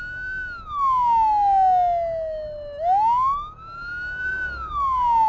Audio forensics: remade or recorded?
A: recorded